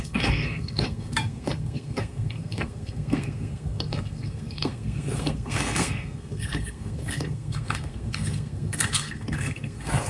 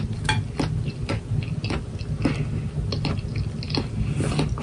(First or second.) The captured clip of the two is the second